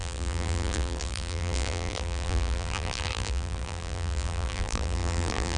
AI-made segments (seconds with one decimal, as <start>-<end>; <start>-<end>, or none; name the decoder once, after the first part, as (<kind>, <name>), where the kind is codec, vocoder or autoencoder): 0.0-5.6 (vocoder, BigVGAN v2)